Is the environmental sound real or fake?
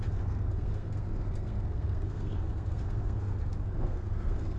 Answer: fake